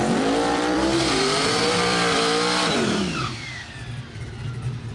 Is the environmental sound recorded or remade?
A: remade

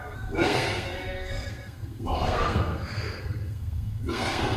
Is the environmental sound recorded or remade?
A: remade